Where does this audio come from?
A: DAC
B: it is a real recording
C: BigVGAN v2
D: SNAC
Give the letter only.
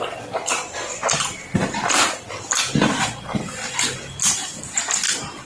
B